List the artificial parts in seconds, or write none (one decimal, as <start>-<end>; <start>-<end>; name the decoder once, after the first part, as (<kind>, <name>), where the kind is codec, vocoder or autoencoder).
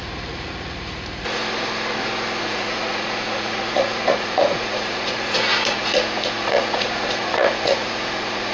0.0-1.4 (vocoder, Vocos); 2.4-8.5